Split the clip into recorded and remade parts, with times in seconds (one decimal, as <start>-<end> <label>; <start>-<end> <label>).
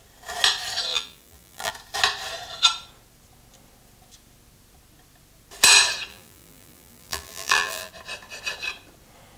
0.0-0.9 recorded; 0.9-1.7 remade; 1.7-6.1 recorded; 6.1-7.9 remade; 7.9-9.4 recorded